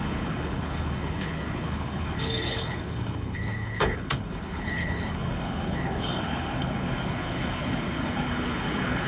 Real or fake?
fake